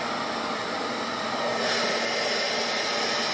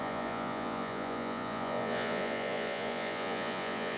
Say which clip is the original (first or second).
first